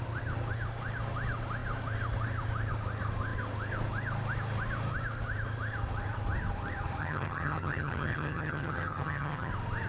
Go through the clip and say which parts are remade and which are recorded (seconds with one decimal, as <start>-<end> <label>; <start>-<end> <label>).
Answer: 0.0-7.0 recorded; 7.0-9.5 remade; 9.5-9.9 recorded